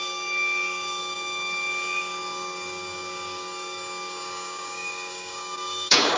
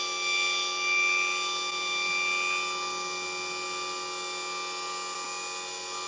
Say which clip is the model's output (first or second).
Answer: first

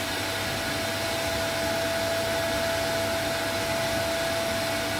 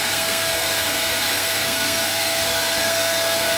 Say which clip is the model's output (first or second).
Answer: second